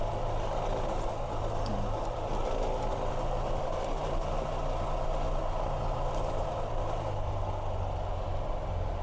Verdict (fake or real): real